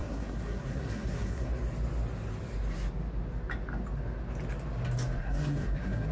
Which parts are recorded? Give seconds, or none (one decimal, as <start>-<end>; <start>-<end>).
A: 1.5-5.2